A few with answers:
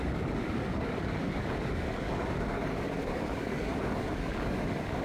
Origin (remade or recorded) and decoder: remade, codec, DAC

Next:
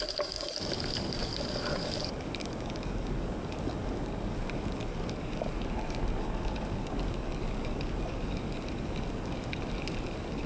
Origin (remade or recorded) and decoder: remade, codec, DAC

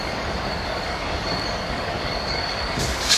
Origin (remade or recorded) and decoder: remade, codec, DAC